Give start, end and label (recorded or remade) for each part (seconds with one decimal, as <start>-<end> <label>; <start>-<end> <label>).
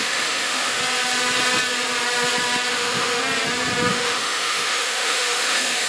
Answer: 0.0-0.8 remade; 0.8-2.7 recorded; 2.7-3.2 remade; 3.2-3.9 recorded; 3.9-5.9 remade